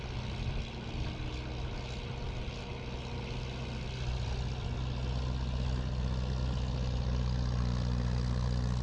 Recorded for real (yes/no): yes